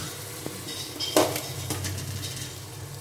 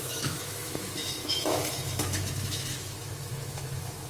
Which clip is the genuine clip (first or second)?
first